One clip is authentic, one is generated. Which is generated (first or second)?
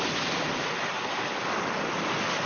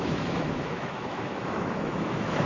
second